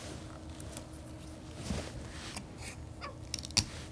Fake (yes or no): no